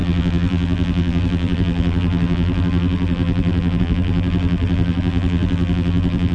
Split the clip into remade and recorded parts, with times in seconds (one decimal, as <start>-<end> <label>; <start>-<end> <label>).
0.0-6.3 remade